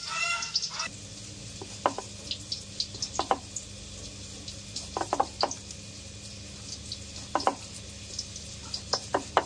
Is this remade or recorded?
recorded